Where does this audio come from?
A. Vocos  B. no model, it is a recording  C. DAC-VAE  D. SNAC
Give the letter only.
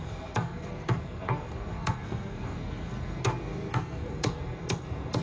D